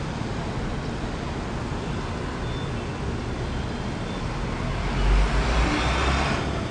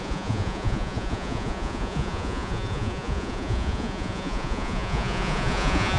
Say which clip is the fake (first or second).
second